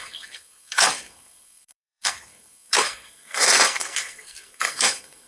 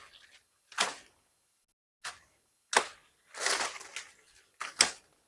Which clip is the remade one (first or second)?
first